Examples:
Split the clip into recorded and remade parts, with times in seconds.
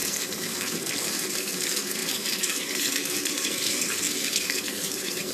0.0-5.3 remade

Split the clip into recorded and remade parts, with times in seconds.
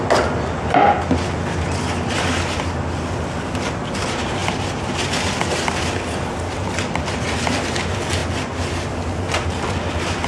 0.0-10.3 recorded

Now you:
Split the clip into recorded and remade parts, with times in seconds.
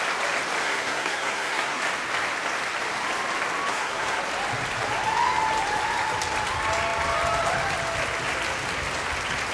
0.0-0.6 recorded; 0.6-1.8 remade; 1.8-3.7 recorded; 3.7-4.2 remade; 4.2-9.5 recorded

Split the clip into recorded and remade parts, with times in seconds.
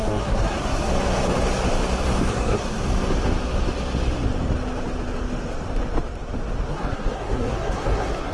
0.0-0.9 remade; 0.9-2.3 recorded; 2.3-2.8 remade; 2.8-6.7 recorded; 6.7-8.3 remade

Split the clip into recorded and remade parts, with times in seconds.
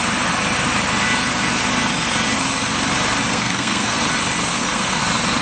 0.0-3.3 recorded; 3.3-4.0 remade; 4.0-4.5 recorded; 4.5-5.0 remade; 5.0-5.4 recorded